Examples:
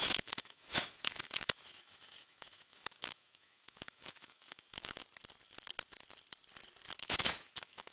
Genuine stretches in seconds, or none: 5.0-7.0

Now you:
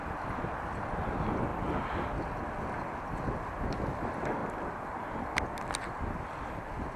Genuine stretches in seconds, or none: 0.0-7.0